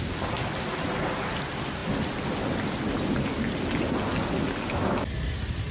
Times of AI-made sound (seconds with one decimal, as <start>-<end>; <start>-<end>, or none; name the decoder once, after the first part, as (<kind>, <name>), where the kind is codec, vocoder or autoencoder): none